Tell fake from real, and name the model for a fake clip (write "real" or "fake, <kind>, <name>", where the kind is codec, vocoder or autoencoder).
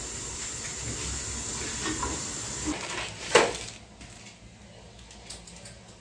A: real